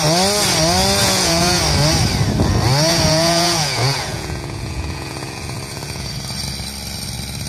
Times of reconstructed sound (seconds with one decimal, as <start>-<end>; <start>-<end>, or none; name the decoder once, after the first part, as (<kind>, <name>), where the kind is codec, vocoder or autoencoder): 1.0-1.6 (vocoder, Vocos); 2.9-6.1